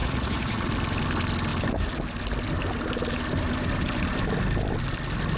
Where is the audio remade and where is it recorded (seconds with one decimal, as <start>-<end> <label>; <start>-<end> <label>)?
0.0-0.7 remade; 0.7-5.4 recorded